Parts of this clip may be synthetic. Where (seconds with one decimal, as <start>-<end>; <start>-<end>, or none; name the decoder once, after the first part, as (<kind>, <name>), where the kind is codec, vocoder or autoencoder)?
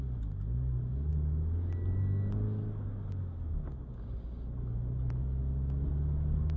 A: none